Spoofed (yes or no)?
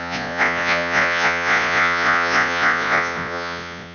yes